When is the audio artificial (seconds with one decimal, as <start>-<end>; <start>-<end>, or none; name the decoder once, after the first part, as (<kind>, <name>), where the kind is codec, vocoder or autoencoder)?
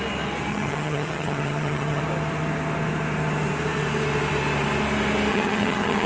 0.5-2.0 (vocoder, HiFi-GAN); 5.3-6.1